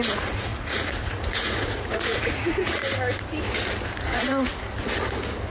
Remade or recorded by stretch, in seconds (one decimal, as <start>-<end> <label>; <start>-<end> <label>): 0.0-2.8 remade; 2.8-4.0 recorded; 4.0-4.5 remade; 4.5-5.5 recorded